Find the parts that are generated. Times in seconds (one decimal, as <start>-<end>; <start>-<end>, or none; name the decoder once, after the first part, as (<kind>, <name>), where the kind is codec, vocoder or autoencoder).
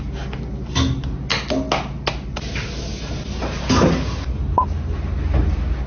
none